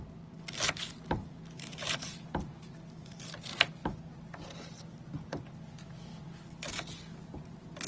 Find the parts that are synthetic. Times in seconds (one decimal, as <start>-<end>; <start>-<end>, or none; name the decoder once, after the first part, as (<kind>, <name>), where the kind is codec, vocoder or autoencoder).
none